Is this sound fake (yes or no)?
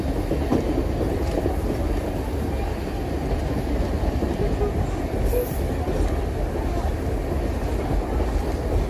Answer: no